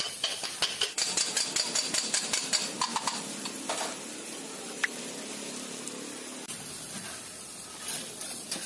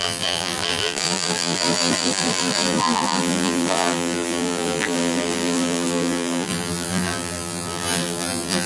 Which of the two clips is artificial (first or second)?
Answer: second